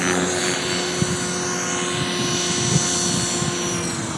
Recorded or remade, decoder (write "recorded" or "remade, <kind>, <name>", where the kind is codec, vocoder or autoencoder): recorded